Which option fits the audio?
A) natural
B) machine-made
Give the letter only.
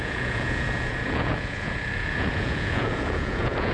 B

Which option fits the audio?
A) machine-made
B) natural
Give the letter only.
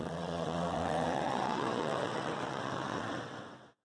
A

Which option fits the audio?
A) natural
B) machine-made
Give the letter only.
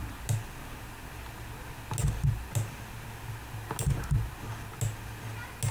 A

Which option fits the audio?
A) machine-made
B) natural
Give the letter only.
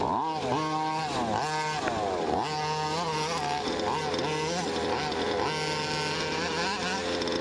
B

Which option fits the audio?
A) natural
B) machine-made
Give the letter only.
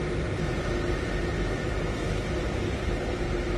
A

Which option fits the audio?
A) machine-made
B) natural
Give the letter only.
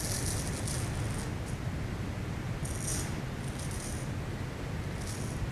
B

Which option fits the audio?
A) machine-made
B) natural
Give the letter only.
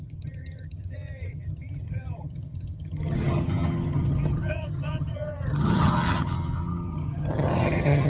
A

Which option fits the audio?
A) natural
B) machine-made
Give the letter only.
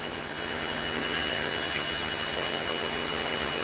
B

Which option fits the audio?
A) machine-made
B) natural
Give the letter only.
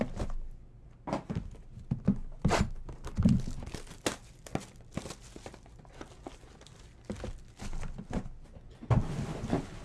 B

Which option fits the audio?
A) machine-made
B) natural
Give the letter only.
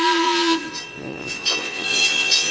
A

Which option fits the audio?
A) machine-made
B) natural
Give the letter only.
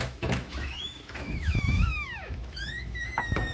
A